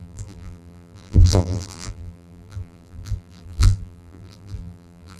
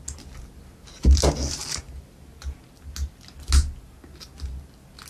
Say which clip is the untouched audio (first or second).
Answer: second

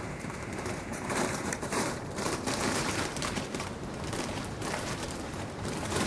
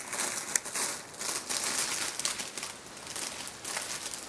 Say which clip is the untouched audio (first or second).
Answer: second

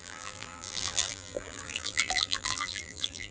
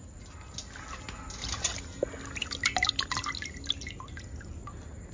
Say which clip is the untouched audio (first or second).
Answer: second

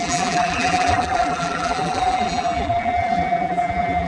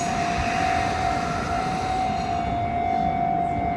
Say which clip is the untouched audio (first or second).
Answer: second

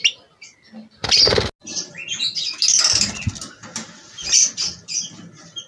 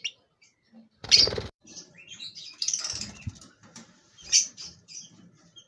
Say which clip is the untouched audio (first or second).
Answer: first